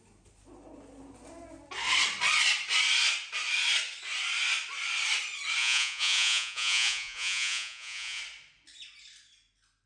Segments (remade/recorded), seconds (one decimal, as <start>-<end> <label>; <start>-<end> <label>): 0.0-5.6 recorded; 5.6-8.2 remade; 8.2-9.9 recorded